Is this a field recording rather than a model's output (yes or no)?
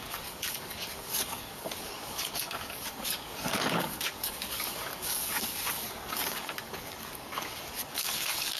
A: no